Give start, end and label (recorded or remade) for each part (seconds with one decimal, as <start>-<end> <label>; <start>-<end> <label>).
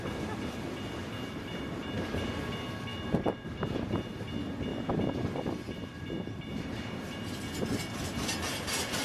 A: 0.0-1.0 recorded; 1.0-2.4 remade; 2.4-2.9 recorded; 2.9-3.4 remade; 3.4-4.7 recorded; 4.7-7.4 remade; 7.4-9.0 recorded